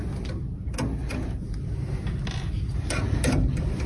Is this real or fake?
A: real